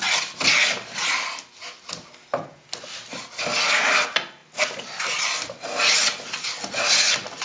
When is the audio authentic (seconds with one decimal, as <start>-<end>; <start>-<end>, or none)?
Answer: 0.0-7.4